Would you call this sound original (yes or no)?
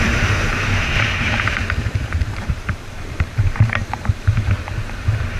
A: no